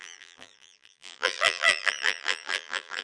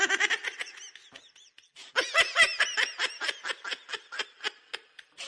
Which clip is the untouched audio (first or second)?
second